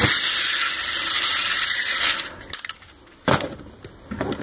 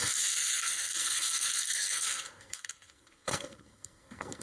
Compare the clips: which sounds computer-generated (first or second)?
second